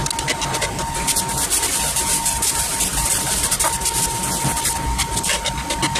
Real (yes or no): yes